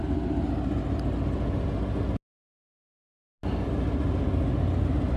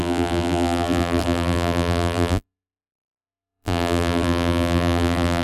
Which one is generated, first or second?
second